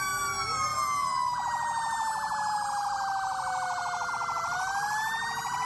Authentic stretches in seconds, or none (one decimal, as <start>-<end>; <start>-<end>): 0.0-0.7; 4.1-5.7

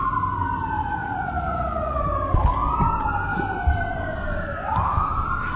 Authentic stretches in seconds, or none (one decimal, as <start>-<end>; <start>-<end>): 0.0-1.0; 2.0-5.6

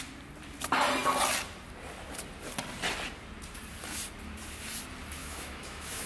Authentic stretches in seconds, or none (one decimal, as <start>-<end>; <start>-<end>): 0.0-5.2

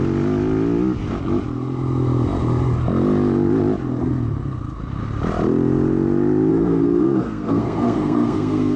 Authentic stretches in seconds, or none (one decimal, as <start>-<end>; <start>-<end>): 0.0-6.5